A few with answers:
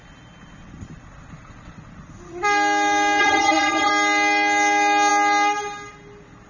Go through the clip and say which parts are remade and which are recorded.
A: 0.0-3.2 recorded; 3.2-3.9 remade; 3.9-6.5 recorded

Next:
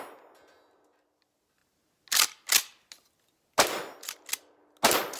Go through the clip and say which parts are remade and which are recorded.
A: 0.0-5.2 recorded

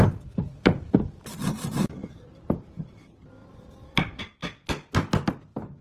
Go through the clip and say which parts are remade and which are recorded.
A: 0.0-2.0 recorded; 2.0-2.8 remade; 2.8-3.4 recorded; 3.4-4.2 remade; 4.2-5.8 recorded

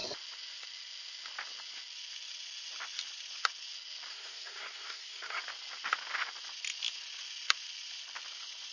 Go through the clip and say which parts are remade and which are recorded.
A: 0.0-4.1 recorded; 4.1-5.4 remade; 5.4-8.7 recorded

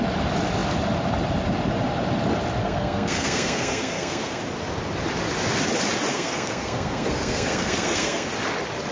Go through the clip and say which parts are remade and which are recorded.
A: 0.0-2.6 recorded; 2.6-4.4 remade; 4.4-6.1 recorded; 6.1-8.3 remade; 8.3-8.9 recorded